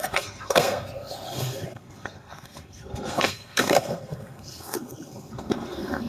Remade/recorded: remade